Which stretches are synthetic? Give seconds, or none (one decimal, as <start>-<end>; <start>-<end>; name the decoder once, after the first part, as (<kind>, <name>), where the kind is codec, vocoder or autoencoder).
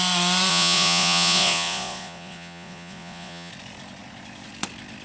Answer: 0.5-3.5 (vocoder, Vocos)